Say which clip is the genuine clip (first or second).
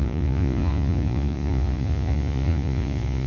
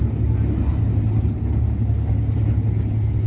second